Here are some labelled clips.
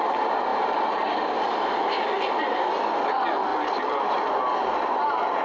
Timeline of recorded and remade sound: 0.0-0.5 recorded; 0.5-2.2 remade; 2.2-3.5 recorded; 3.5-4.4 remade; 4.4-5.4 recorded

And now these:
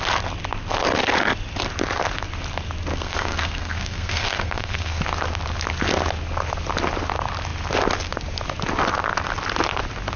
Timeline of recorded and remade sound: 0.0-2.9 recorded; 2.9-5.0 remade; 5.0-10.2 recorded